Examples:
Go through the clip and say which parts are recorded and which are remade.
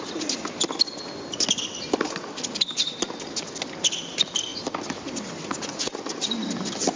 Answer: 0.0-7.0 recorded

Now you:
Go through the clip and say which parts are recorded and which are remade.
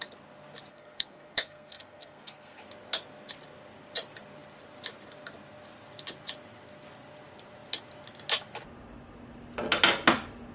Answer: 0.0-0.7 recorded; 0.7-2.6 remade; 2.6-10.5 recorded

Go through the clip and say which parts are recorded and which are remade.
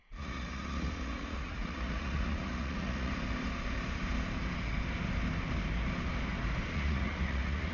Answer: 0.0-3.1 remade; 3.1-6.7 recorded; 6.7-7.7 remade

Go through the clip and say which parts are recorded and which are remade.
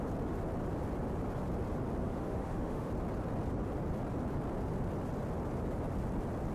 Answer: 0.0-2.0 recorded; 2.0-2.9 remade; 2.9-6.5 recorded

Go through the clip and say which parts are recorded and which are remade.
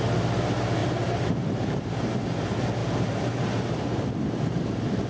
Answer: 0.0-0.8 recorded; 0.8-1.9 remade; 1.9-2.8 recorded; 2.8-3.6 remade; 3.6-5.1 recorded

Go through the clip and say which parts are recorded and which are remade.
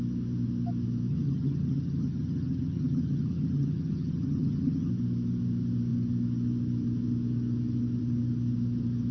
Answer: 0.0-1.1 recorded; 1.1-4.9 remade; 4.9-9.1 recorded